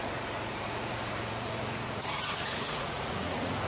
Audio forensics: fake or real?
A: fake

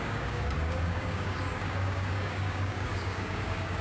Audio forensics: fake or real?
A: fake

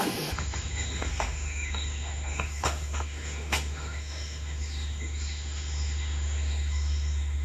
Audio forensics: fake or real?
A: fake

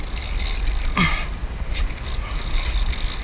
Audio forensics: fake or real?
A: real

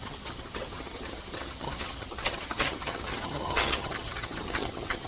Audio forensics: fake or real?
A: fake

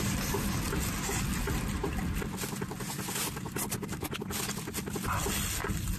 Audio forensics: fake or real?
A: real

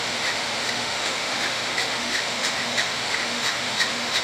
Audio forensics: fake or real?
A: fake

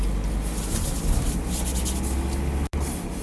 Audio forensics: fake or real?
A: real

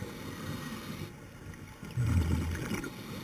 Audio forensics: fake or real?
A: real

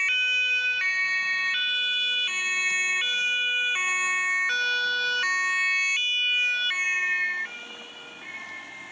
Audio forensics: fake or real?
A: real